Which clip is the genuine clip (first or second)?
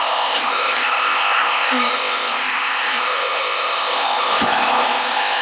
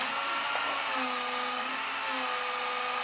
second